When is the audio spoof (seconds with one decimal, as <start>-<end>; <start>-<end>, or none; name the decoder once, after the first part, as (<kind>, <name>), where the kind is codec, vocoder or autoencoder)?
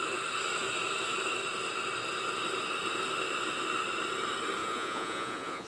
4.6-5.7 (vocoder, Vocos)